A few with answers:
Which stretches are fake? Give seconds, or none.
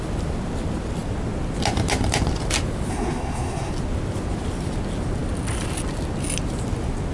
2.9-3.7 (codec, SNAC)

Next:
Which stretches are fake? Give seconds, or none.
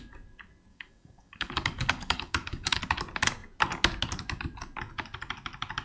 0.7-2.8 (codec, DAC)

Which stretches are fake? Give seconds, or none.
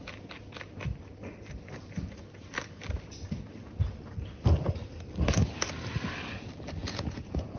6.8-7.6 (vocoder, Vocos)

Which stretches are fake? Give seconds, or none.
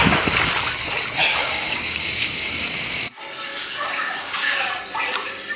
1.4-3.1 (codec, DAC); 3.5-4.7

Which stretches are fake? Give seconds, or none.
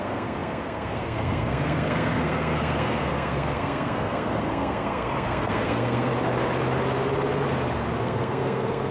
0.0-6.1 (codec, SNAC); 8.0-8.9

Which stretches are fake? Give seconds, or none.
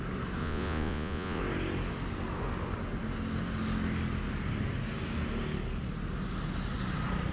0.4-1.4 (vocoder, Vocos)